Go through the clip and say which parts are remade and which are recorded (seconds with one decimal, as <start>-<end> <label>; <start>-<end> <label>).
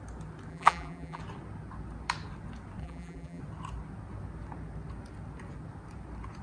0.0-0.5 recorded; 0.5-1.2 remade; 1.2-2.8 recorded; 2.8-3.4 remade; 3.4-6.4 recorded